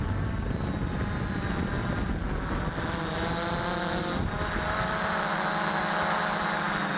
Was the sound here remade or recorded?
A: recorded